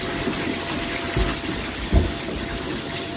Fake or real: real